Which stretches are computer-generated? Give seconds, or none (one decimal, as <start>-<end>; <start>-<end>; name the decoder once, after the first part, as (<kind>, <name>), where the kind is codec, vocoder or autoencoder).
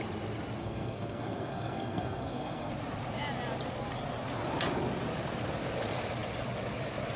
0.6-2.7 (codec, SNAC)